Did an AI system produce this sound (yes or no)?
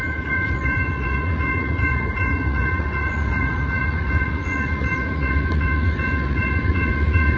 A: yes